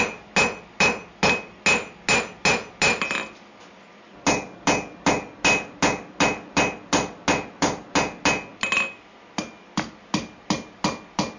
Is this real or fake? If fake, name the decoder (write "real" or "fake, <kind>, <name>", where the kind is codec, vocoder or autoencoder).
real